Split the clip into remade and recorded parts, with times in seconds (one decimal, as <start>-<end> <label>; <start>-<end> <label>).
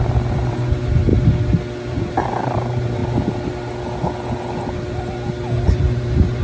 0.0-1.1 remade; 1.1-1.8 recorded; 1.8-3.0 remade; 3.0-5.7 recorded; 5.7-6.4 remade